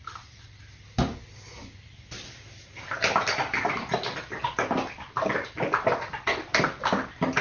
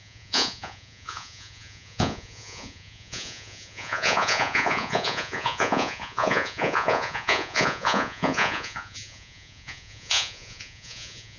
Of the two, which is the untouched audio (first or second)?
first